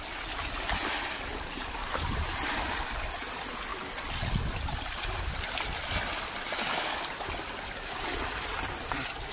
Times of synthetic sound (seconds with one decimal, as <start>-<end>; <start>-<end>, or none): 1.3-2.1